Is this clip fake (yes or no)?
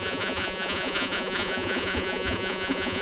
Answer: yes